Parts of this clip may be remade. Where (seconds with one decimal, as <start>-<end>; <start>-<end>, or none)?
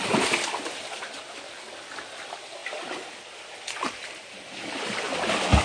none